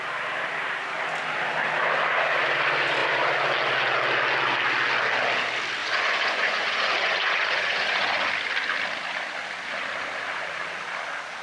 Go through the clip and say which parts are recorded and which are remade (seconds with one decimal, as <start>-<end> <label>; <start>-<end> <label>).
0.0-5.8 recorded; 5.8-8.3 remade; 8.3-11.4 recorded

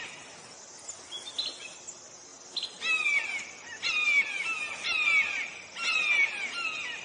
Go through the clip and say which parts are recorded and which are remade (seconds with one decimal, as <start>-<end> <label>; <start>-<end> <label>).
0.0-7.0 recorded

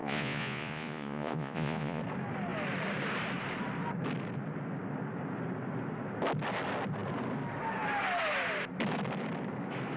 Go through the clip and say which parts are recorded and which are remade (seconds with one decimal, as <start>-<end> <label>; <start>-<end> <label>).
0.0-2.0 remade; 2.0-10.0 recorded

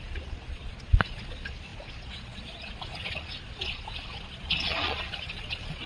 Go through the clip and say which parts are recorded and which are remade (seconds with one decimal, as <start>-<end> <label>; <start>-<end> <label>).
0.0-5.9 remade

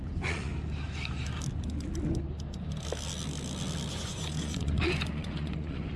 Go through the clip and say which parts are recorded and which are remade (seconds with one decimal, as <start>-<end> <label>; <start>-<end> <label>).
0.0-0.5 remade; 0.5-3.9 recorded; 3.9-6.0 remade

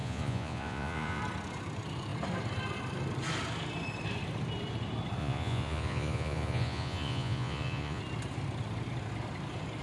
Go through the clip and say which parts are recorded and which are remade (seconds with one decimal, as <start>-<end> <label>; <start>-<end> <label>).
0.0-1.2 remade; 1.2-5.2 recorded; 5.2-8.0 remade; 8.0-9.8 recorded

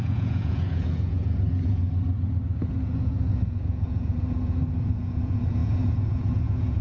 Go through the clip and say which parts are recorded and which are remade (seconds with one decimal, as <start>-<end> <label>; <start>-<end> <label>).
0.0-1.8 remade; 1.8-2.7 recorded; 2.7-6.8 remade

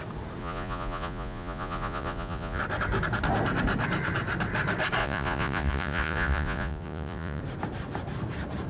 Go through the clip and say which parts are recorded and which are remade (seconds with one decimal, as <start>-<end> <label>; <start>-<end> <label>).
0.0-0.4 recorded; 0.4-2.6 remade; 2.6-5.0 recorded; 5.0-7.4 remade; 7.4-8.7 recorded